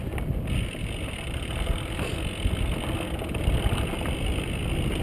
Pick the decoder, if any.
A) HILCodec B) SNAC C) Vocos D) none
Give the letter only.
D